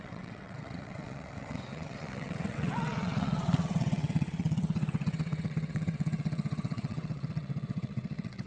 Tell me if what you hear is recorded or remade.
remade